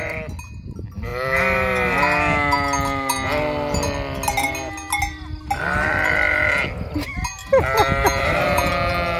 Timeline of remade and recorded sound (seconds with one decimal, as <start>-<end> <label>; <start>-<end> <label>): 0.0-7.4 recorded; 7.4-8.7 remade; 8.7-9.2 recorded